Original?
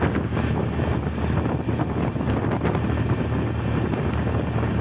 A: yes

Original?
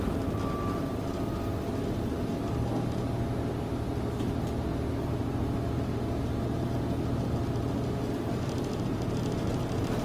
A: yes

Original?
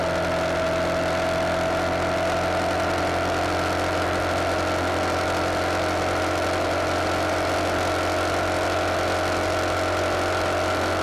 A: yes